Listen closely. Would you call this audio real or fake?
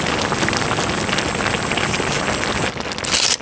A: real